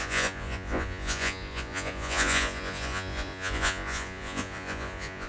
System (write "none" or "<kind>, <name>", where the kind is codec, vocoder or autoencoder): vocoder, Vocos